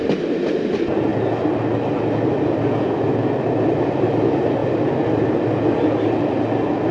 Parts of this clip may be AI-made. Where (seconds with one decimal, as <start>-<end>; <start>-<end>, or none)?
none

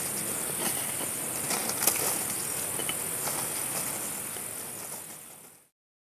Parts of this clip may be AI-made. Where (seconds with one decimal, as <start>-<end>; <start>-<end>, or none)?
none

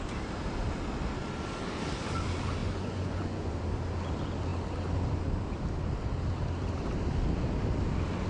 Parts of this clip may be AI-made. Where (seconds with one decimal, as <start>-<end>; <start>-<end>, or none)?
2.6-3.5